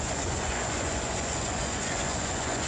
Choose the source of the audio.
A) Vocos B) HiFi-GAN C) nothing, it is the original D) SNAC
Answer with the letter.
A